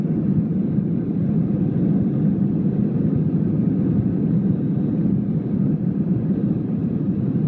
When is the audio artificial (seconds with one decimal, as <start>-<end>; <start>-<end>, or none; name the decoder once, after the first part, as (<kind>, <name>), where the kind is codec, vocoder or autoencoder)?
none